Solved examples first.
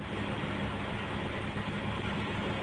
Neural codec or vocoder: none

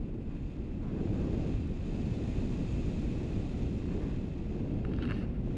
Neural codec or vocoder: none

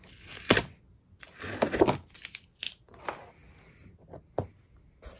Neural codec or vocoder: none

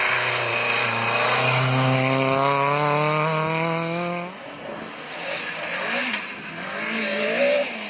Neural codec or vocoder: none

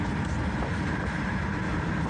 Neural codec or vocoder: none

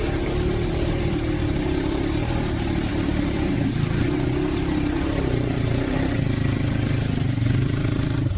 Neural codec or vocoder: none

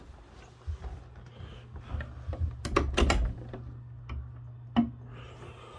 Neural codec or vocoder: none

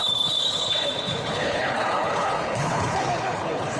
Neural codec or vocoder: codec, HILCodec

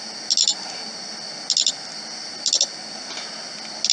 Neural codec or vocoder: none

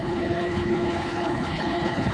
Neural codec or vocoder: codec, HILCodec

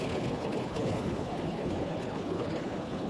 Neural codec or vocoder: codec, HILCodec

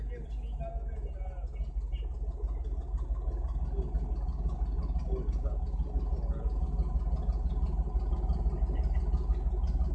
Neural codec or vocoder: none